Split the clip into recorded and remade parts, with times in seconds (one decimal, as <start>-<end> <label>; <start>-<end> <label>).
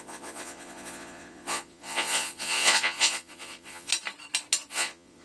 0.0-3.9 remade; 3.9-4.7 recorded; 4.7-5.2 remade